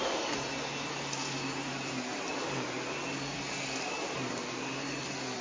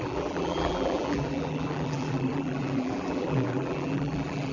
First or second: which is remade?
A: second